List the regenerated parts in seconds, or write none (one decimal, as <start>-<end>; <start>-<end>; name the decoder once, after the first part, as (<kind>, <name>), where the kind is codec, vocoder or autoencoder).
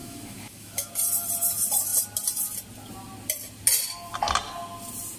0.0-0.9 (autoencoder, DAC-VAE)